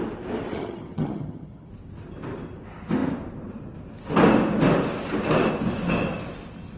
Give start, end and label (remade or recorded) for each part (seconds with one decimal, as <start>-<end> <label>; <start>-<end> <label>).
0.0-0.5 recorded; 0.5-1.7 remade; 1.7-6.8 recorded